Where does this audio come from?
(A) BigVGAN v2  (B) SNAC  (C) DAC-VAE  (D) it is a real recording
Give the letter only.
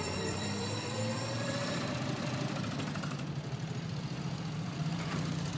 A